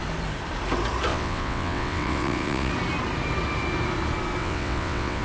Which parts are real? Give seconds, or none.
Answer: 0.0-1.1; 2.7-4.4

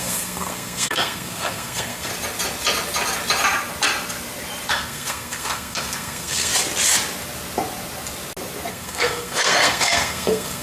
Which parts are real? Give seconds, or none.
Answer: 2.1-4.7; 6.5-8.7

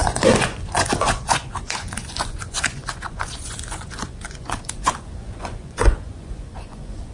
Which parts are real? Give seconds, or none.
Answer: none

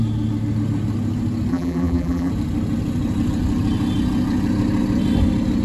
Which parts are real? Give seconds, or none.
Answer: 0.0-1.5; 2.3-5.6

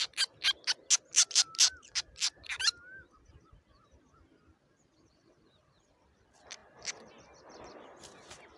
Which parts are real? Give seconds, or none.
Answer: 0.0-8.6

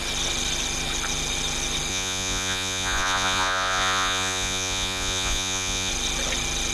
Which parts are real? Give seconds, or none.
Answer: 0.0-1.9; 5.9-6.7